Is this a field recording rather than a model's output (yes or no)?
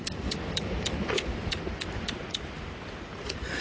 no